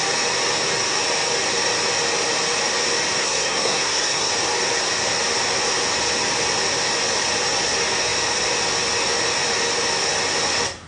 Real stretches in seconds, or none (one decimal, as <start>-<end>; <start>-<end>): 0.0-3.2; 4.3-10.9